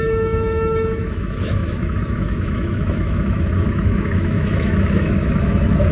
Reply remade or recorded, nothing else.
remade